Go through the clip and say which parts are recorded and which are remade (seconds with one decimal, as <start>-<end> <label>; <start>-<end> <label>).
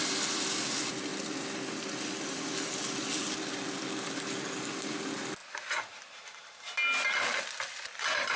0.0-8.4 recorded